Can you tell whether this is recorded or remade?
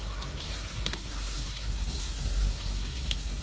remade